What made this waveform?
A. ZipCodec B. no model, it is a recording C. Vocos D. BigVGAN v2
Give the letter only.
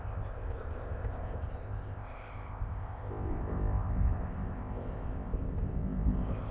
A